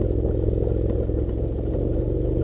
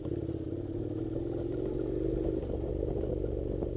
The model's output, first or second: first